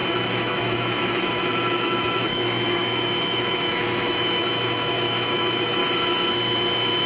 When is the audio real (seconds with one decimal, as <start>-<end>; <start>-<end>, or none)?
5.8-7.1